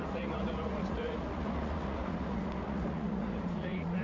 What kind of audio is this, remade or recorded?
remade